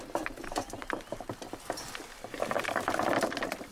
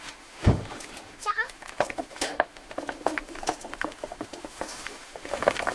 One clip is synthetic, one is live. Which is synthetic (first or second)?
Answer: second